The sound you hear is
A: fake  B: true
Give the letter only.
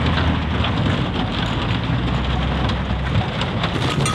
B